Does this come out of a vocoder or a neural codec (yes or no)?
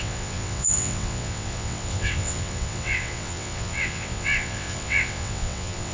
yes